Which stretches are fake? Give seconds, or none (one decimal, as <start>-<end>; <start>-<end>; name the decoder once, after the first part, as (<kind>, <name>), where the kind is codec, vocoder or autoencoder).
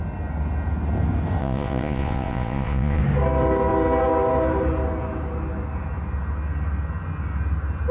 1.4-3.0 (vocoder, Vocos)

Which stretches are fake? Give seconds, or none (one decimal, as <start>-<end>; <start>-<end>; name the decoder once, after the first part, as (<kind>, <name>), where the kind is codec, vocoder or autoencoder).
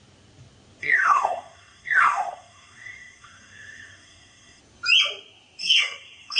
0.8-4.6 (codec, SNAC); 5.6-6.4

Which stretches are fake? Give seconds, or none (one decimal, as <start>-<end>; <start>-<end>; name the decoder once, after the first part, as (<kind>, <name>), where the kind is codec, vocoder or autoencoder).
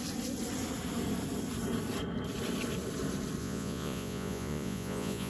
3.4-5.3 (vocoder, Vocos)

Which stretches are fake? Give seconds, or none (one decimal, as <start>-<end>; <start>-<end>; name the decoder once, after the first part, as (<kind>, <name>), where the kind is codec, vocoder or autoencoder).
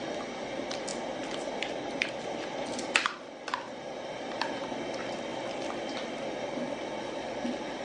none